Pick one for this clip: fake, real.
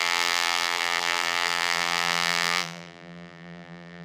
fake